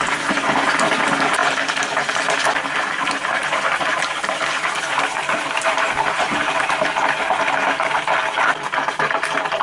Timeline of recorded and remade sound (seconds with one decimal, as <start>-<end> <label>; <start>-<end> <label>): 0.0-9.6 recorded